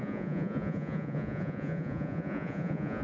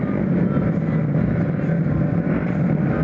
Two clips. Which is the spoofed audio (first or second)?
first